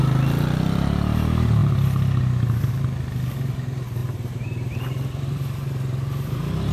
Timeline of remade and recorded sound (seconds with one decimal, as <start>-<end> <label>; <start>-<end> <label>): 0.0-4.0 recorded; 4.0-6.7 remade